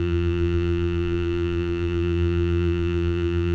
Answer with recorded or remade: remade